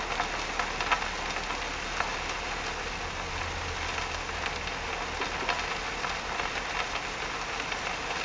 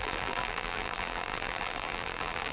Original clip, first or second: first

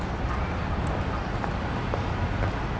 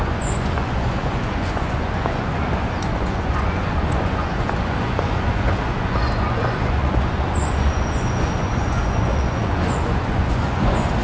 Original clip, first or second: first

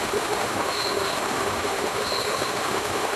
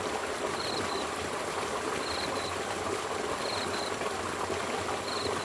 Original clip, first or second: second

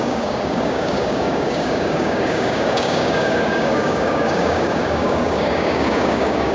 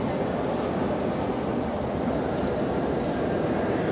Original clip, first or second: second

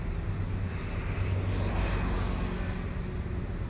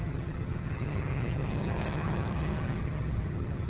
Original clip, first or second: first